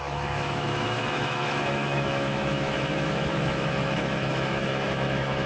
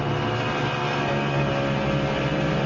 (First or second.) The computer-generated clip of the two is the first